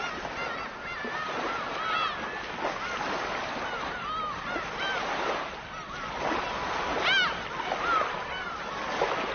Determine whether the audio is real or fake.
real